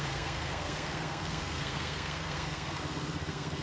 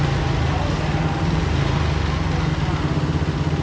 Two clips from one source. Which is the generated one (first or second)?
first